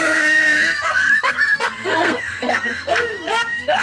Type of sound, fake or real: fake